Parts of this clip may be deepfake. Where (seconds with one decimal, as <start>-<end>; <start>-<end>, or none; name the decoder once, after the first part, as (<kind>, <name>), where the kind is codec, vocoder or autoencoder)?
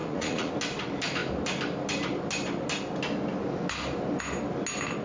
0.0-0.5 (vocoder, Vocos)